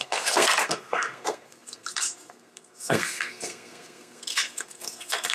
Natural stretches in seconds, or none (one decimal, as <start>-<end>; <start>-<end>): none